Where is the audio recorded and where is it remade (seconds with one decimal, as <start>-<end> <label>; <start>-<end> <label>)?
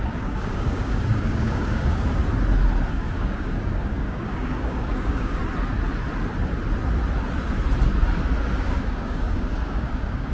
0.0-2.2 remade; 2.2-2.9 recorded; 2.9-5.4 remade; 5.4-8.6 recorded; 8.6-10.3 remade